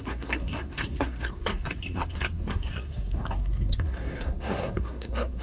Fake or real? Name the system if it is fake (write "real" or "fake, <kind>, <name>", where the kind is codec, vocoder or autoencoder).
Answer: fake, codec, SNAC